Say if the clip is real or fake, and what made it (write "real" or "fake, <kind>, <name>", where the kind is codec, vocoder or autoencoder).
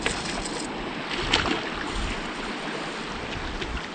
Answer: real